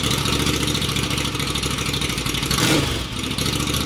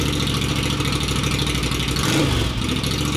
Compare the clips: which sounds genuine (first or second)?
second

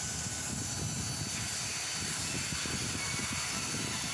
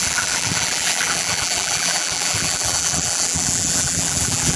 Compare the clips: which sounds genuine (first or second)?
first